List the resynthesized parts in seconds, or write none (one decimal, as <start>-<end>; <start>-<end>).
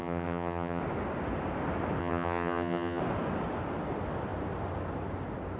0.0-0.8; 2.0-3.0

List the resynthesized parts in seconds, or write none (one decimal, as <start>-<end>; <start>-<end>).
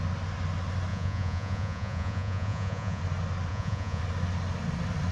0.9-3.0; 3.5-4.0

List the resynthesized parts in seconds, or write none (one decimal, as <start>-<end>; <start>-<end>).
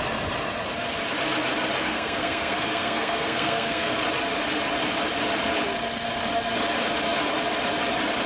1.8-3.9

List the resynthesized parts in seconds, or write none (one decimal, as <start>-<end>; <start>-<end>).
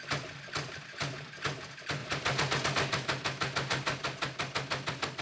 none